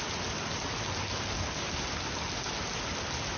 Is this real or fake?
real